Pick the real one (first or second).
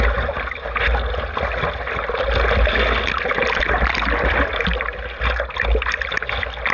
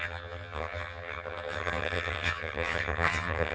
first